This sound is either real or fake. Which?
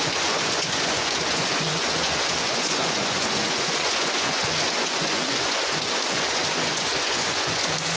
fake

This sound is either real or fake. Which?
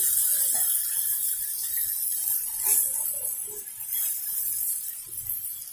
real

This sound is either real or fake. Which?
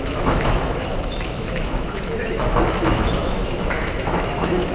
fake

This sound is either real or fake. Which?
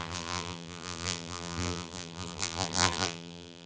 fake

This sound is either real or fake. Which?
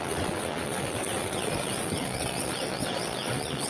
fake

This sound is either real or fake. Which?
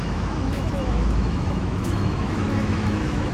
fake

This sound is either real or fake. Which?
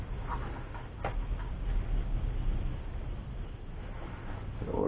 real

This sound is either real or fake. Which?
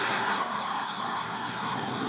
fake